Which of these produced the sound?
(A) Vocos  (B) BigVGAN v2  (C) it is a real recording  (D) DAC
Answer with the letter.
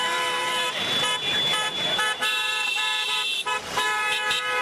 B